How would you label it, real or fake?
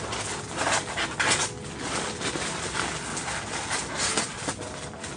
real